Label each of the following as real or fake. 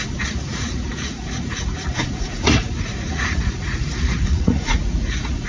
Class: fake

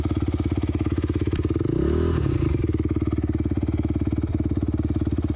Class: real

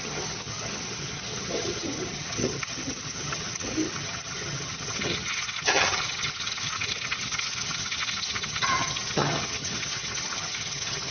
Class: fake